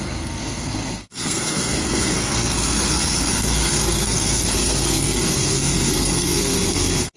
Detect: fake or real fake